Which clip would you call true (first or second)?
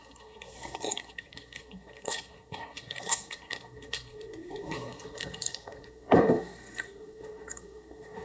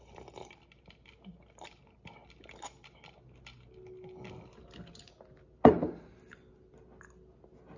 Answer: second